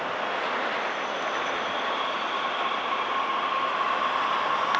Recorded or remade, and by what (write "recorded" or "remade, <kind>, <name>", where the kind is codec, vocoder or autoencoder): recorded